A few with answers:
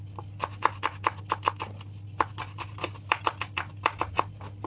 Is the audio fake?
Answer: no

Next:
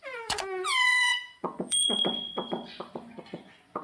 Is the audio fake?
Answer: yes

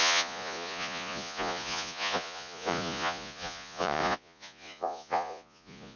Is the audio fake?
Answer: yes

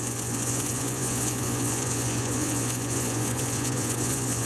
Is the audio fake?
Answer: yes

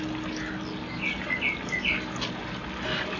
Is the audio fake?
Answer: no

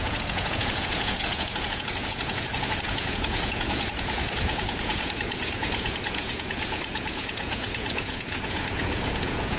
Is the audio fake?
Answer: yes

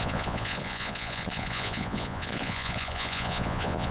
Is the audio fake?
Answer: yes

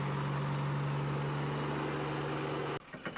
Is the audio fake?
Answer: no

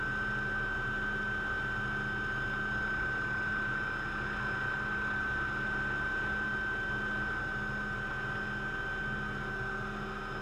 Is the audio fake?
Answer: no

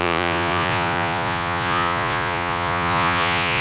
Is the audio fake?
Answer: yes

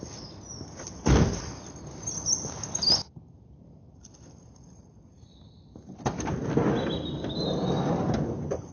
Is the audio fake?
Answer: no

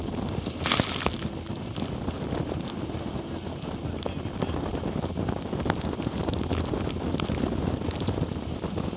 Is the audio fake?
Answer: no